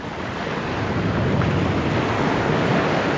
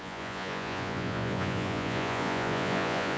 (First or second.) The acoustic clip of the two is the first